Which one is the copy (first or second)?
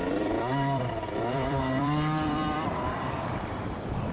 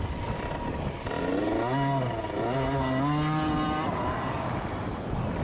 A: first